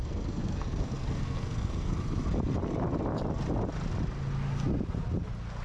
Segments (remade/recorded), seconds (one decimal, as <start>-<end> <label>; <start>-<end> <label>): 0.0-2.0 remade; 2.0-5.6 recorded